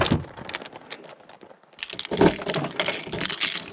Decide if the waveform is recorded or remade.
recorded